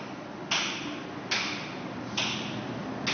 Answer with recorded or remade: recorded